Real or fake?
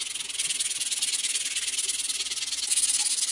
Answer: real